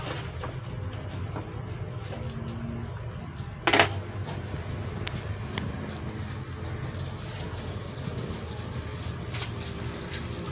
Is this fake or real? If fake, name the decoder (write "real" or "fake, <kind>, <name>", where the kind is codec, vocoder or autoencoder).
real